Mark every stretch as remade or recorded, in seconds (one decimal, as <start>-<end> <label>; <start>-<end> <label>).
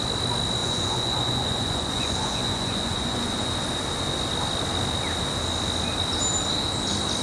0.0-0.6 recorded; 0.6-3.5 remade; 3.5-7.2 recorded